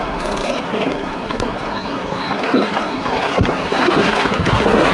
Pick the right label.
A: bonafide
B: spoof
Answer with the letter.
B